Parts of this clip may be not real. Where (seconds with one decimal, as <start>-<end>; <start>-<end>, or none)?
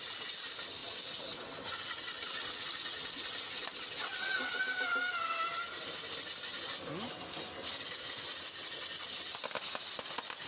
0.8-4.6